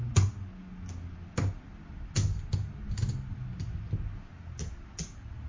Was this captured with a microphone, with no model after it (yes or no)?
yes